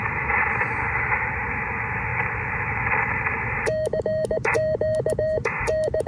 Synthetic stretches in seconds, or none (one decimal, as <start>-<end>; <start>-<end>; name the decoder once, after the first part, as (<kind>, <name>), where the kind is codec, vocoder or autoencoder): 2.1-6.1 (vocoder, BigVGAN v2)

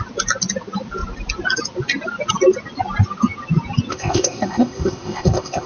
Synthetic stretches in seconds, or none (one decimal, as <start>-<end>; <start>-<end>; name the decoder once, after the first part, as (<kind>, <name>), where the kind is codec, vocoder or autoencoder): 3.9-5.7 (codec, ZipCodec)

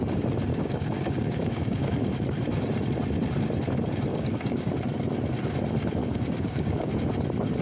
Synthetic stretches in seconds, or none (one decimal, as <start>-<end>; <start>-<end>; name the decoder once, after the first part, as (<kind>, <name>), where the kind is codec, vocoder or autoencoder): 0.5-2.2 (codec, DAC); 4.1-4.7; 6.0-6.9